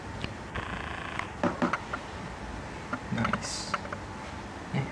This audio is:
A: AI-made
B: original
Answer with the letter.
B